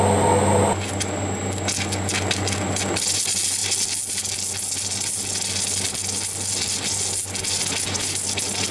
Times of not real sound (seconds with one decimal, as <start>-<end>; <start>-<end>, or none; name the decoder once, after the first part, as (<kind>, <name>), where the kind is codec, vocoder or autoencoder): none